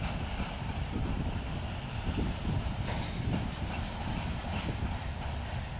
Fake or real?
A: fake